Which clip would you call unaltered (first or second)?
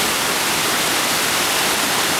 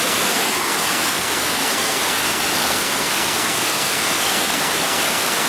first